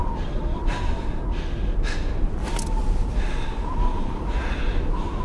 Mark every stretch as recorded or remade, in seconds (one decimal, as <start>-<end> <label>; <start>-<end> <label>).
0.0-5.2 recorded